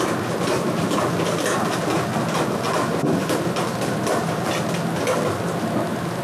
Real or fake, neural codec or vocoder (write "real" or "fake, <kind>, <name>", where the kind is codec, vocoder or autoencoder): real